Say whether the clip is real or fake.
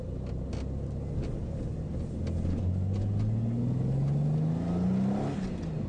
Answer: real